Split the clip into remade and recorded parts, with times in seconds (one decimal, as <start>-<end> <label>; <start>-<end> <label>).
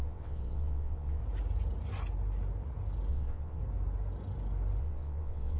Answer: 0.0-1.2 remade; 1.2-3.1 recorded; 3.1-3.6 remade; 3.6-4.8 recorded; 4.8-5.6 remade